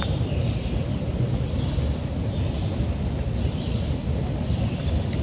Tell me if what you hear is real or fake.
real